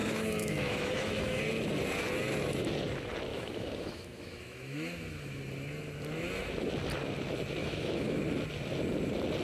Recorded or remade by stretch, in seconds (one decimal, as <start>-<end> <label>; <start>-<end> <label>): 0.0-1.4 remade; 1.4-3.3 recorded; 3.3-5.4 remade; 5.4-7.6 recorded; 7.6-8.2 remade; 8.2-9.4 recorded